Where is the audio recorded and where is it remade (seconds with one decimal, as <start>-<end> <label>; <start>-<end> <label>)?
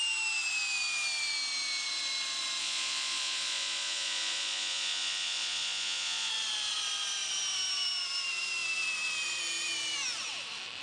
0.0-2.6 recorded; 2.6-6.3 remade; 6.3-10.8 recorded